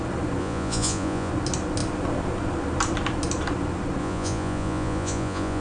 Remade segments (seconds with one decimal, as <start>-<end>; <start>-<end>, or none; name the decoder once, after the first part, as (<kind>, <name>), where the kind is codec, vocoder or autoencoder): 0.4-1.3 (vocoder, Vocos); 4.0-5.6